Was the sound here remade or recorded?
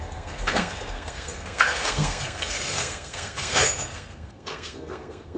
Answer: remade